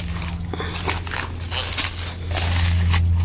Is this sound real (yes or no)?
yes